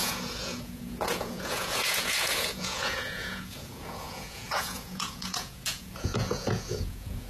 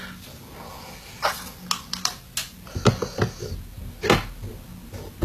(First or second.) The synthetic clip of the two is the first